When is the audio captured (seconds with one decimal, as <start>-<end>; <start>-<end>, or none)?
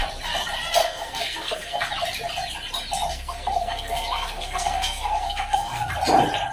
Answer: 0.0-0.8; 1.8-3.1; 5.9-6.5